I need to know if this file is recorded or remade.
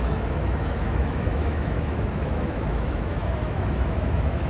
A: remade